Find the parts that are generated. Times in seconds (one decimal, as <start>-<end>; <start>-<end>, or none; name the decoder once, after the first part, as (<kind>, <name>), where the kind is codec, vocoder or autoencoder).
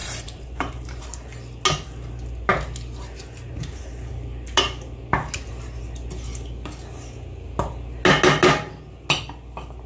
0.0-1.0 (vocoder, BigVGAN v2)